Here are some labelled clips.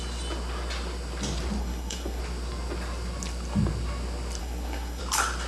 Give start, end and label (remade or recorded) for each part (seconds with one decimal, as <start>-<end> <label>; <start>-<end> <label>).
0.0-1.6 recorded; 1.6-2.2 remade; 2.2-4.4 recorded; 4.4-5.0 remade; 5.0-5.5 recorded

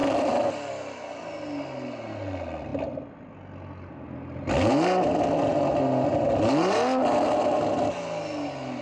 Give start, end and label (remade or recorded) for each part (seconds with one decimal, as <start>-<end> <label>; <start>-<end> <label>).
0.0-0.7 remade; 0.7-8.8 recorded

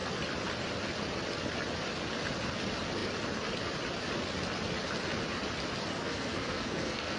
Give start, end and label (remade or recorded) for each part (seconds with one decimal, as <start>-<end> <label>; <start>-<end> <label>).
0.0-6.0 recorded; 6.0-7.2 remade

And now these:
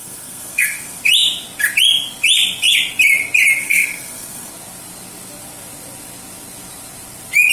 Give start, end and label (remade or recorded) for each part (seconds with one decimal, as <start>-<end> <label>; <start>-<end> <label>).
0.0-1.0 remade; 1.0-3.6 recorded; 3.6-4.5 remade; 4.5-7.5 recorded

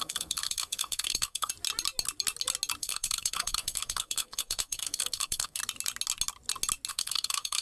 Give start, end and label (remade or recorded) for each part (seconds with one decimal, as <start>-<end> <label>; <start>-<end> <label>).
0.0-1.5 remade; 1.5-2.8 recorded; 2.8-5.6 remade; 5.6-6.9 recorded; 6.9-7.6 remade